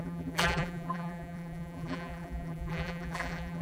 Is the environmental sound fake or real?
fake